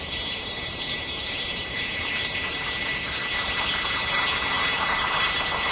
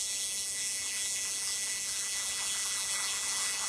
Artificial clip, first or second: first